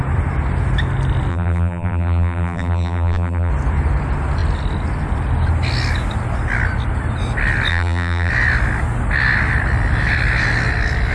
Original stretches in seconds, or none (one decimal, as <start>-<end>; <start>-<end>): 0.0-1.3; 3.5-7.7; 8.3-11.1